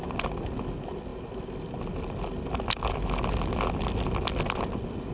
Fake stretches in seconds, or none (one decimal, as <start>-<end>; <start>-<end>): none